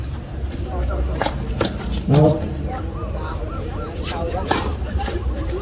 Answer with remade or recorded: remade